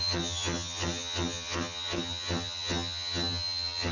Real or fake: fake